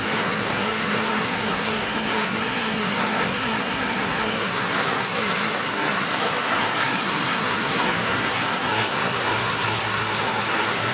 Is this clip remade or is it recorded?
remade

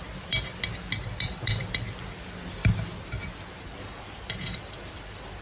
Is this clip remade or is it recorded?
recorded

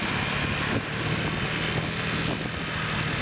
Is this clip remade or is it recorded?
recorded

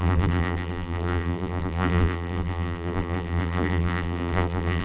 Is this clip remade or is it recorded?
remade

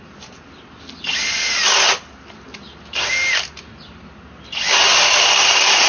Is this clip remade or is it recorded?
recorded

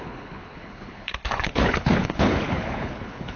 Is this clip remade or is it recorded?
remade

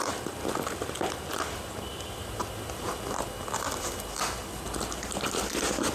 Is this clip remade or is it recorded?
recorded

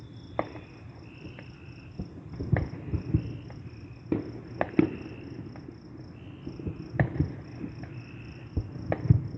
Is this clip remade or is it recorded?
recorded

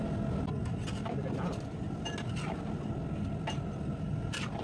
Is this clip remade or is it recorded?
recorded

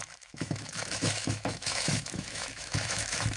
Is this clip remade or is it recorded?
remade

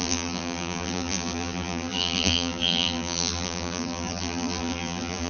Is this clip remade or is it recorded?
remade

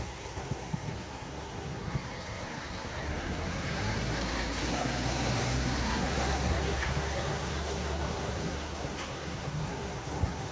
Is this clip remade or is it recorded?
remade